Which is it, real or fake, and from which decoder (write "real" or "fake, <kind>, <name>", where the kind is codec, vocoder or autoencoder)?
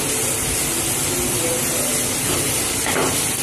real